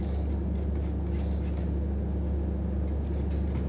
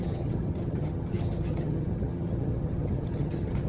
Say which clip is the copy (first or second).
second